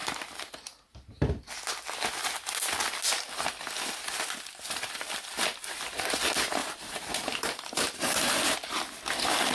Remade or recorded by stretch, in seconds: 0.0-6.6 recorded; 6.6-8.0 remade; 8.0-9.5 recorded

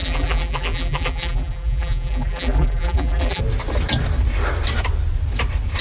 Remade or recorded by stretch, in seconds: 0.0-3.4 remade; 3.4-5.8 recorded

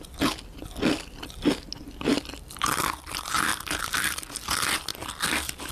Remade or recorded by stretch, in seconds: 0.0-2.1 recorded; 2.1-2.8 remade; 2.8-3.5 recorded; 3.5-4.3 remade; 4.3-4.9 recorded; 4.9-5.7 remade

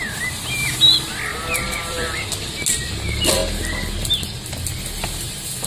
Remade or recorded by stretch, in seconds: 0.0-1.3 recorded; 1.3-2.3 remade; 2.3-5.7 recorded

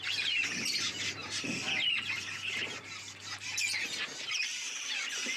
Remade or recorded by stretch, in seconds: 0.0-5.4 recorded

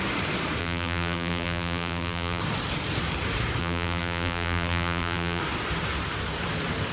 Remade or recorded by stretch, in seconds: 0.0-0.6 recorded; 0.6-2.4 remade; 2.4-3.6 recorded; 3.6-5.4 remade; 5.4-6.9 recorded